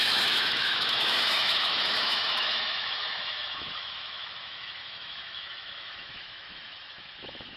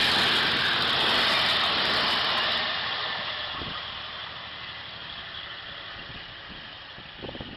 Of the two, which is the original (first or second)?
second